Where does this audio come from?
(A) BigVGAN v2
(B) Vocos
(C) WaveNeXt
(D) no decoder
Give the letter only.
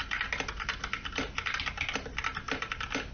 D